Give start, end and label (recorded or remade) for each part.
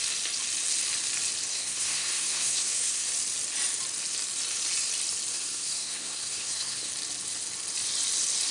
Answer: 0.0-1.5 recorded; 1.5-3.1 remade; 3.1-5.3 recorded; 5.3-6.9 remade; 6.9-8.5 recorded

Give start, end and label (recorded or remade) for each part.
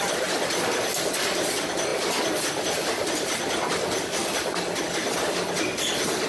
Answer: 0.0-6.3 recorded